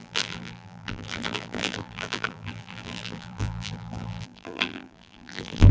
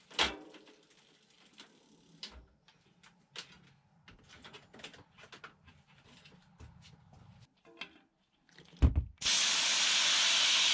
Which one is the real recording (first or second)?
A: second